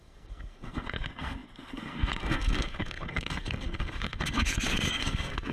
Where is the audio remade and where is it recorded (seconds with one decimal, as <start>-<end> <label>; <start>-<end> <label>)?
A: 0.0-5.5 remade

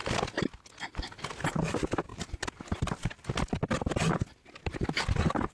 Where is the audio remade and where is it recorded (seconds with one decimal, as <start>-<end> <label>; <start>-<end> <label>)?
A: 0.0-5.5 recorded